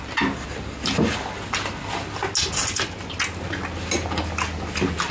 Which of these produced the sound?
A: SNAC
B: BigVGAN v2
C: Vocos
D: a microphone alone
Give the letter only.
D